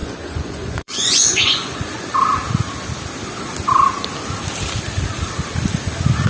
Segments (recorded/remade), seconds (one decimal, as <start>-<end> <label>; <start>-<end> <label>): 0.0-2.1 remade; 2.1-6.3 recorded